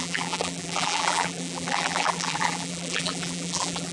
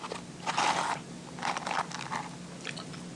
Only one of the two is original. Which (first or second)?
second